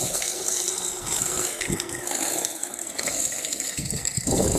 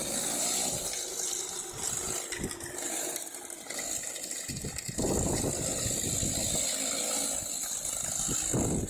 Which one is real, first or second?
second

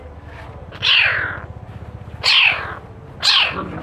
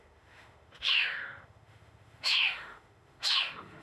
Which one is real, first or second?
first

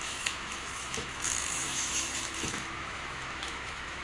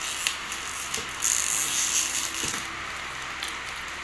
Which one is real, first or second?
second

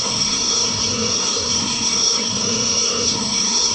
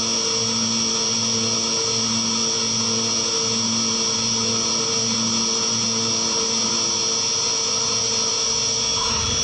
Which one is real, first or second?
second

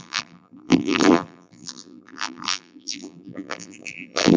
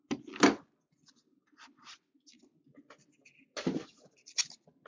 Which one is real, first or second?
second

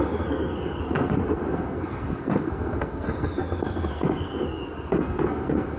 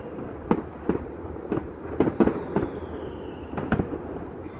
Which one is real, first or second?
second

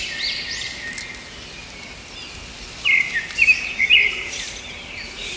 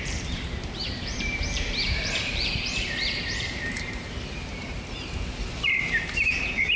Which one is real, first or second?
first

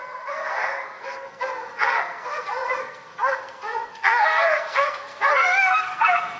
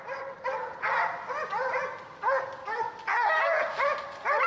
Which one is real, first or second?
second